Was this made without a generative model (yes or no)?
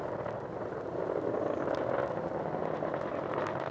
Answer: yes